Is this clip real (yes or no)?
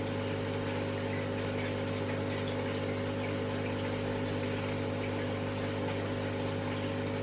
yes